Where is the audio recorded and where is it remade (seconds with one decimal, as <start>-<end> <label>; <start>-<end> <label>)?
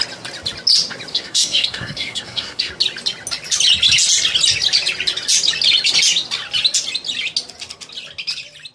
0.0-1.1 recorded; 1.1-2.7 remade; 2.7-8.7 recorded